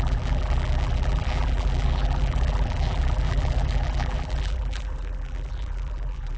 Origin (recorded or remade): remade